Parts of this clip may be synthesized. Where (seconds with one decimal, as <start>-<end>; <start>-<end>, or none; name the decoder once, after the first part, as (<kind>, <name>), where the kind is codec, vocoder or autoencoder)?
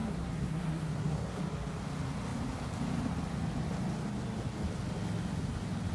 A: 0.0-1.4 (codec, SNAC)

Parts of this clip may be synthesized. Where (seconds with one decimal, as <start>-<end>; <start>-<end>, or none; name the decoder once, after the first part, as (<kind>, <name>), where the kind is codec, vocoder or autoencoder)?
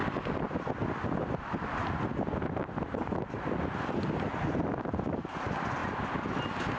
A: none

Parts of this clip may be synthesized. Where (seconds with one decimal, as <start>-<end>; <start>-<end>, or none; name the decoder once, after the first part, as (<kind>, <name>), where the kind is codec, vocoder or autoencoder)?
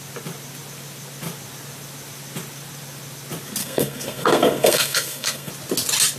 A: 3.6-5.5 (codec, SNAC)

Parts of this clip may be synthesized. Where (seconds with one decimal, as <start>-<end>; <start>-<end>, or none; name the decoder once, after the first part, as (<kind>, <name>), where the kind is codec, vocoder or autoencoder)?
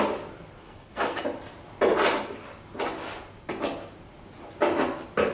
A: 0.6-1.2 (codec, SNAC)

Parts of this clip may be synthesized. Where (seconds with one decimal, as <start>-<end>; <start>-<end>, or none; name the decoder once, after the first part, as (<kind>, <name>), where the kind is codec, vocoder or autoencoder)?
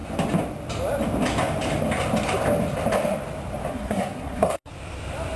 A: 3.7-4.7 (codec, SNAC)